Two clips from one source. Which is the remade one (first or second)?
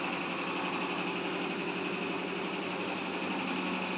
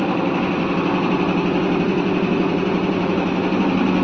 second